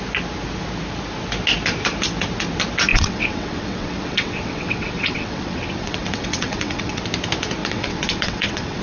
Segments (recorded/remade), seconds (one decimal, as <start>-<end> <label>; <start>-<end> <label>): 0.0-2.9 recorded; 2.9-7.0 remade; 7.0-7.6 recorded; 7.6-8.8 remade